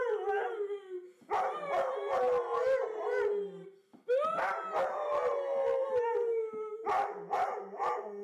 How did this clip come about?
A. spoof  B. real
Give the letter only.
B